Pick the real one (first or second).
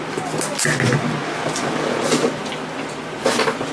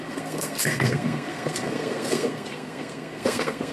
first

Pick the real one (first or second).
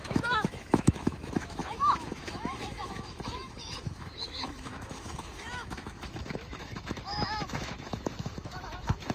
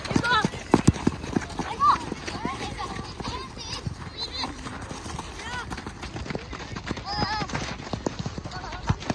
second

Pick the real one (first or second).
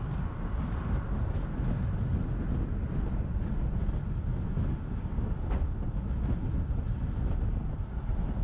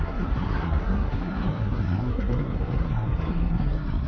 first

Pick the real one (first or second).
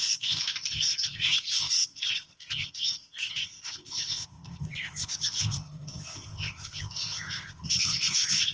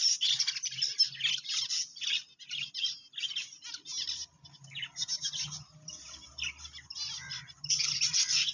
second